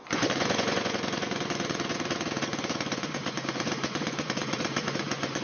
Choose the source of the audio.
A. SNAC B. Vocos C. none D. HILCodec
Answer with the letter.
B